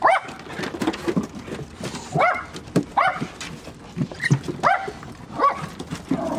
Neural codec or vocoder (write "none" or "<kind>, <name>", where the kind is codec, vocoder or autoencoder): none